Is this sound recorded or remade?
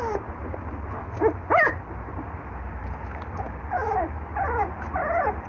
recorded